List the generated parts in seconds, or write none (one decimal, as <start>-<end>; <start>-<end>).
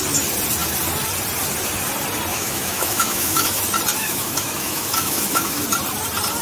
2.3-3.6; 4.0-5.6